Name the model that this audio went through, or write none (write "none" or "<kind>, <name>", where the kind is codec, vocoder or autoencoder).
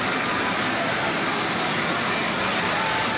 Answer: none